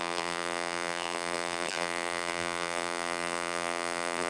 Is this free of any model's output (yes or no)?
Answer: no